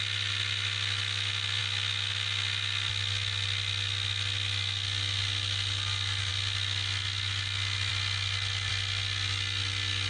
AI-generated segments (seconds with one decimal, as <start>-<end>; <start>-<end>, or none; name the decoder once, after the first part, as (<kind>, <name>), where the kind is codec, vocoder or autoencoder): none